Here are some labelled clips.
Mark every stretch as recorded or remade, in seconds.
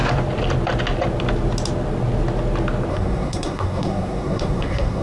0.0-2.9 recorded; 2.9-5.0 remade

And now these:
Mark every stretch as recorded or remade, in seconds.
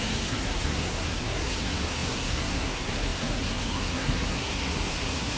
0.0-5.4 remade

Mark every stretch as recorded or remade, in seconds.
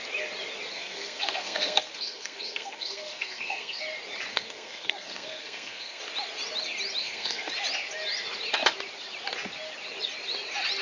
0.0-0.7 recorded; 0.7-3.8 remade; 3.8-4.3 recorded; 4.3-6.0 remade; 6.0-7.0 recorded; 7.0-7.5 remade; 7.5-10.8 recorded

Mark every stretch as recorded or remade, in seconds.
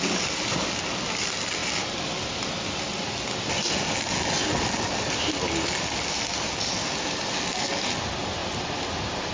0.0-9.3 recorded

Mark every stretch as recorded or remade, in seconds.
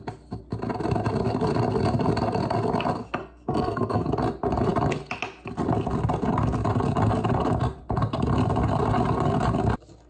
0.0-3.2 recorded; 3.2-4.1 remade; 4.1-10.1 recorded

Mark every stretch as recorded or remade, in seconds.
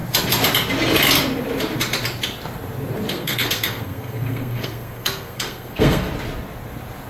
0.0-3.1 recorded; 3.1-6.1 remade; 6.1-7.1 recorded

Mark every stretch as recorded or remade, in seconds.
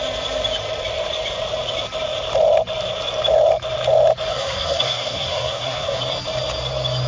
0.0-4.3 recorded; 4.3-6.0 remade; 6.0-7.1 recorded